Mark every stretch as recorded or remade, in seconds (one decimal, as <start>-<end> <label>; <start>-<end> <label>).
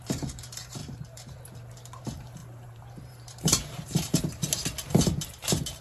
0.0-0.8 recorded; 0.8-1.4 remade; 1.4-2.4 recorded; 2.4-4.2 remade; 4.2-5.8 recorded